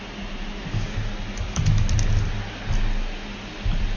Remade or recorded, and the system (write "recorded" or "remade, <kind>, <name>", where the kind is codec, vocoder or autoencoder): recorded